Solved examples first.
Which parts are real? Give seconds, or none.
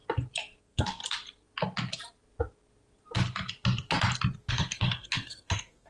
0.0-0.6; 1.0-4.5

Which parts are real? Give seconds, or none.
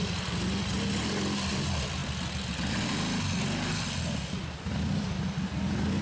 0.0-6.0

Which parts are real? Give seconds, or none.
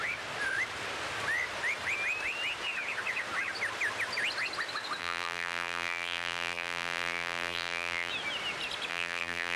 0.0-5.0; 8.1-8.9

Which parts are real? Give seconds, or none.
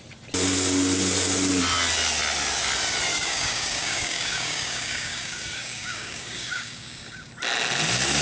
0.0-3.1; 7.3-8.2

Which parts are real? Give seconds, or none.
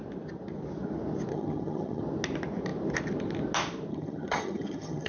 0.0-1.3; 2.0-3.9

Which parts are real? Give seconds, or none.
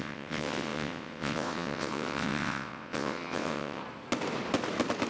3.8-5.1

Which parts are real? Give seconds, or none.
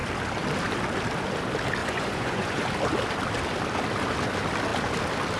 0.0-1.8; 2.6-5.4